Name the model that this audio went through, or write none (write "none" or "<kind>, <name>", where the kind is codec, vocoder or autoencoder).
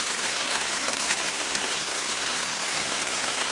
codec, SNAC